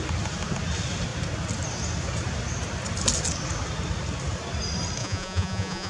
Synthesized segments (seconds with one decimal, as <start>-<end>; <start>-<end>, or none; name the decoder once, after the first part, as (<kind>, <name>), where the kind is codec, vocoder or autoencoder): 5.0-5.9 (vocoder, Vocos)